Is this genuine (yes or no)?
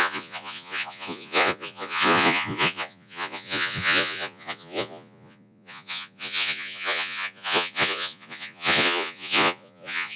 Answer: no